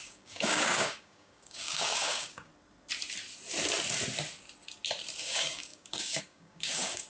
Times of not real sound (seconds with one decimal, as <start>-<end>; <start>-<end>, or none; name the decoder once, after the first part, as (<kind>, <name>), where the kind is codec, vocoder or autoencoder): 0.0-2.5 (codec, DAC); 5.2-7.1